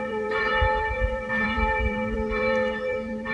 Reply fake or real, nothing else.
fake